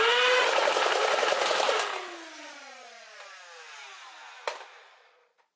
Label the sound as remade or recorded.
recorded